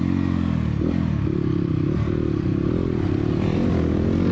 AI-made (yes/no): no